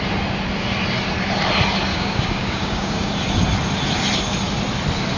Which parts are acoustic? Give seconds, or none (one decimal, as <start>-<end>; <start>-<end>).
0.0-1.9; 3.1-5.2